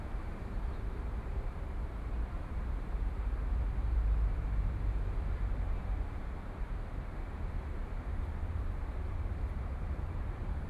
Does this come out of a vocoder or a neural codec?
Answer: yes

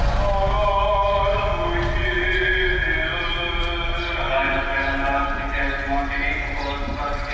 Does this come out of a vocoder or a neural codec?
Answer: no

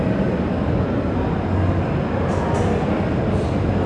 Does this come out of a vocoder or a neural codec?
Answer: no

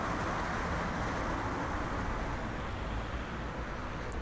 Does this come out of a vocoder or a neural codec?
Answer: no